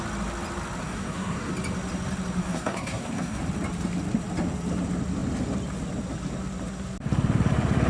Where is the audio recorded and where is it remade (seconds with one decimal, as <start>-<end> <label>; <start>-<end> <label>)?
0.0-0.8 recorded; 0.8-1.5 remade; 1.5-2.4 recorded; 2.4-3.4 remade; 3.4-7.9 recorded